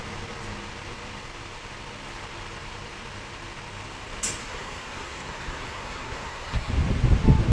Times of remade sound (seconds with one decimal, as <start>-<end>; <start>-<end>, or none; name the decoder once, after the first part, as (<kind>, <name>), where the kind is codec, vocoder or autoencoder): 4.4-6.7 (codec, SNAC)